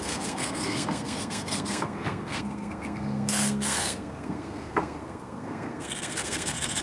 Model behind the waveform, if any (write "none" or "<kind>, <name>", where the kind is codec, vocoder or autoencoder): codec, SNAC